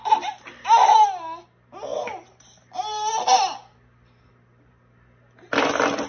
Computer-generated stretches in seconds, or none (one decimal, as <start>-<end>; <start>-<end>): none